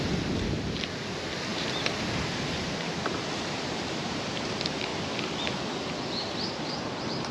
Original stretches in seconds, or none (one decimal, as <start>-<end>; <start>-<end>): 4.9-6.8